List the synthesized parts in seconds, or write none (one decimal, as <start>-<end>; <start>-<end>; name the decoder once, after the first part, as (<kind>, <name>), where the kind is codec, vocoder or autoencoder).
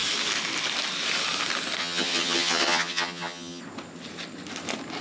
1.8-3.6 (vocoder, HiFi-GAN)